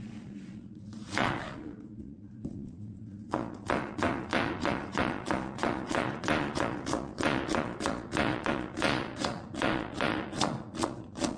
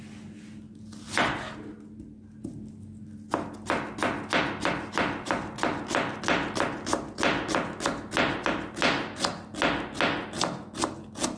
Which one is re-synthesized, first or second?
first